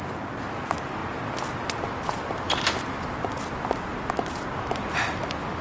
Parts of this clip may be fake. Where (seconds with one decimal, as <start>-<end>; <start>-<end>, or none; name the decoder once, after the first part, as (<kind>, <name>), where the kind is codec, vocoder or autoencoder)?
none